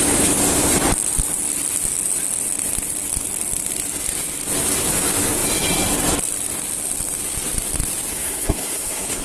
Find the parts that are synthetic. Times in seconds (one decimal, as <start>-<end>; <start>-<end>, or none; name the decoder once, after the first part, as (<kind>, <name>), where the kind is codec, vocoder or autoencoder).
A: 8.1-9.2 (codec, SNAC)